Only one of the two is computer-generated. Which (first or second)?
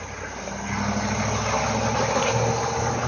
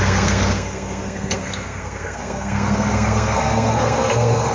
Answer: second